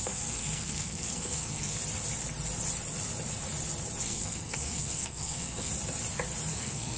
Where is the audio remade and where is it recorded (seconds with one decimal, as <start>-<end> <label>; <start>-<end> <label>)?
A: 0.0-1.8 remade; 1.8-4.0 recorded; 4.0-5.7 remade; 5.7-6.5 recorded; 6.5-7.0 remade